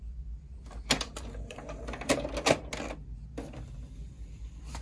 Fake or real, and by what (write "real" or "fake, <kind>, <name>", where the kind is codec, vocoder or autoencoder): real